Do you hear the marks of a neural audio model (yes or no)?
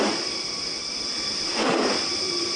no